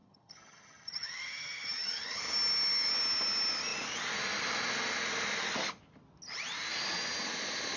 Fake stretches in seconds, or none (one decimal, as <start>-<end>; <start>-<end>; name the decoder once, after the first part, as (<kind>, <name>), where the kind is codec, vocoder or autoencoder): 0.0-2.2 (vocoder, HiFi-GAN)